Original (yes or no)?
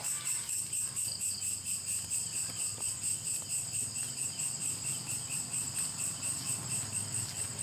yes